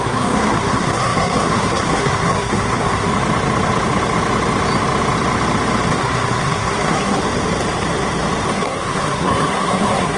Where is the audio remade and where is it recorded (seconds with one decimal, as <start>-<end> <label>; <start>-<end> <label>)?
0.0-3.1 remade; 3.1-5.9 recorded; 5.9-7.2 remade; 7.2-8.5 recorded; 8.5-10.2 remade